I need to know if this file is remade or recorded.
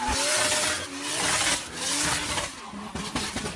recorded